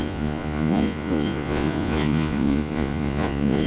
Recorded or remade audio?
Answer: remade